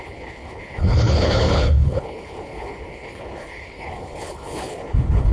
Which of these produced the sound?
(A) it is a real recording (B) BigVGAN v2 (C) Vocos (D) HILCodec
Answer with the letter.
D